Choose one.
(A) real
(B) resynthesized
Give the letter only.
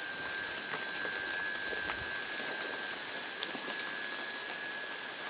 A